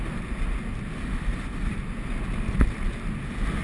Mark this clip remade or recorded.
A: recorded